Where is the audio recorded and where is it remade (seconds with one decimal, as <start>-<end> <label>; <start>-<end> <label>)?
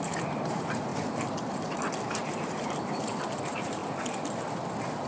0.0-0.9 remade; 0.9-2.1 recorded; 2.1-3.8 remade; 3.8-5.1 recorded